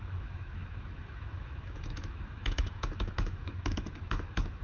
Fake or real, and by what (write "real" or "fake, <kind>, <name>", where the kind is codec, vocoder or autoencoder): fake, autoencoder, DAC-VAE